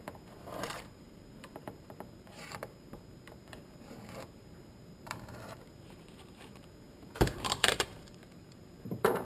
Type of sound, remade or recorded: remade